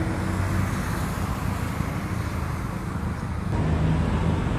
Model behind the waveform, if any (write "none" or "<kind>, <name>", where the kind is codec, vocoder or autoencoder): none